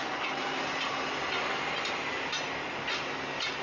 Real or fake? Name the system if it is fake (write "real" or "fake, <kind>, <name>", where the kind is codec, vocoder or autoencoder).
real